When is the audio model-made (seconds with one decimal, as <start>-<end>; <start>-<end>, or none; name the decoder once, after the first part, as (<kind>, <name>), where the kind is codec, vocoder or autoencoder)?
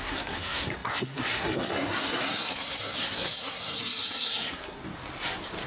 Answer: 0.0-4.8 (codec, SNAC)